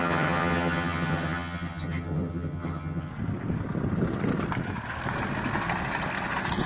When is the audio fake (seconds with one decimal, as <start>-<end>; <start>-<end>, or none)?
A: 0.0-3.1